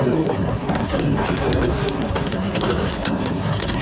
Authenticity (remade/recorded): remade